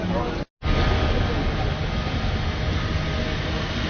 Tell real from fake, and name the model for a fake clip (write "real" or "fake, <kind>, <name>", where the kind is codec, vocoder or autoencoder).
real